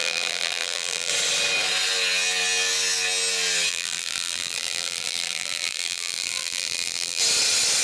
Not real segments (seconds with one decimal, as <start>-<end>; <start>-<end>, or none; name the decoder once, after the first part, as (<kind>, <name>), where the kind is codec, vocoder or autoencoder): 0.0-1.1 (vocoder, BigVGAN v2); 3.7-7.2